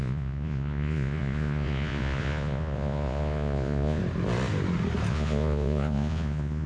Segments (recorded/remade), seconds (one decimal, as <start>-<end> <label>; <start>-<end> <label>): 0.0-4.0 remade; 4.0-5.1 recorded; 5.1-6.7 remade